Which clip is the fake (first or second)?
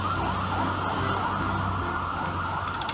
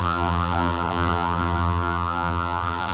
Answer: second